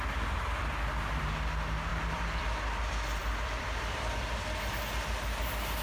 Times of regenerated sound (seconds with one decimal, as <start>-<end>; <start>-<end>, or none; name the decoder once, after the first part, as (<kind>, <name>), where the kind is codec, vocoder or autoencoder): 1.9-2.4 (vocoder, BigVGAN v2); 3.2-4.3